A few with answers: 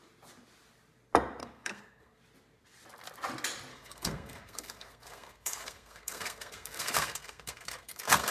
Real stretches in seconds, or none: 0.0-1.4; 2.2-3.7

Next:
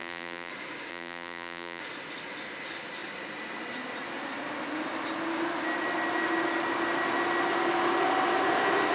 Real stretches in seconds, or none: 0.5-0.9; 1.8-8.9

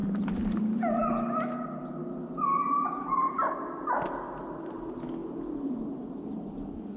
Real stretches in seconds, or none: 1.1-2.5; 3.3-5.2; 5.8-7.0

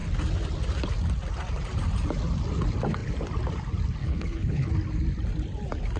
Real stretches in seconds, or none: 0.0-4.0; 4.7-6.0

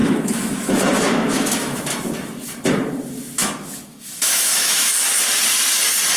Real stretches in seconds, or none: 1.8-3.4; 4.9-6.2

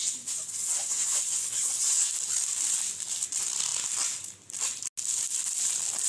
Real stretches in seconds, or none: 2.1-6.1

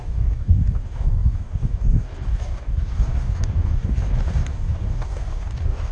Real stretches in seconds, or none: none